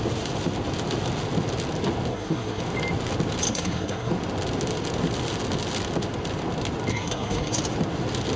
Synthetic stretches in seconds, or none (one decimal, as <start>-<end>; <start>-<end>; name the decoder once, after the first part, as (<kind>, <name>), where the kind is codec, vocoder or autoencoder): 2.1-2.6 (codec, SNAC); 3.5-4.1; 6.9-7.6